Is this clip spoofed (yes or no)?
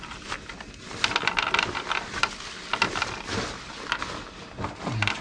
no